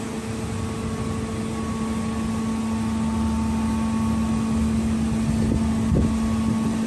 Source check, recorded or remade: recorded